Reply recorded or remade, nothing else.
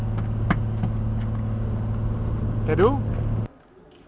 recorded